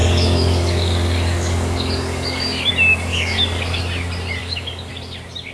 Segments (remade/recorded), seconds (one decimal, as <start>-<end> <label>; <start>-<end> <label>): 0.0-2.7 remade; 2.7-3.1 recorded; 3.1-3.8 remade; 3.8-4.4 recorded; 4.4-4.9 remade; 4.9-5.5 recorded